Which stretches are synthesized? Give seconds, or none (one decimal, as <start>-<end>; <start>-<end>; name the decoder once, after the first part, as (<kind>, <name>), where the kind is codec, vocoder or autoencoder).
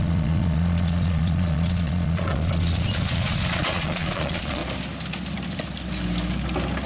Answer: 0.0-4.6 (vocoder, Vocos)